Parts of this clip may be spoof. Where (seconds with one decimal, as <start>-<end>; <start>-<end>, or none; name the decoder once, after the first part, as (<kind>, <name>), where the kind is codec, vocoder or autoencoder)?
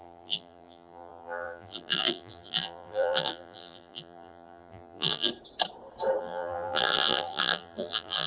0.0-5.3 (vocoder, BigVGAN v2); 6.2-8.3